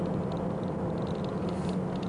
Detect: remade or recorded recorded